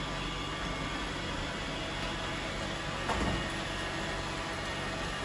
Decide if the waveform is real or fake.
real